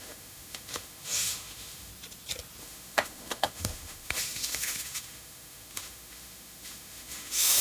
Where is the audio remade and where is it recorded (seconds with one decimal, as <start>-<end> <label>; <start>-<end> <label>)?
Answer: 0.0-1.9 remade; 1.9-2.6 recorded; 2.6-7.6 remade